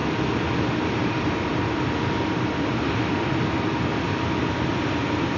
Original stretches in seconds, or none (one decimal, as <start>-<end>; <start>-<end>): 0.0-0.9; 1.5-4.7

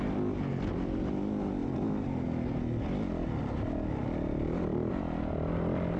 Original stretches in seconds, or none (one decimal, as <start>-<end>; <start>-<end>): 0.0-6.0

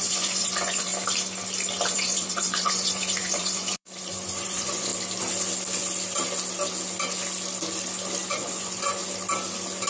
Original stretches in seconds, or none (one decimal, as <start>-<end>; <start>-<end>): 0.9-1.9; 4.9-8.3; 9.0-9.9

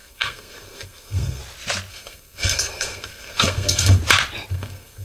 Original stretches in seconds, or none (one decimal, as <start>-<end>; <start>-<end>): 1.4-1.9; 4.0-4.5